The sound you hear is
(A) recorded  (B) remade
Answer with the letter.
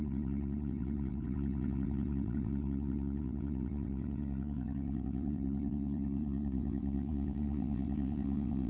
B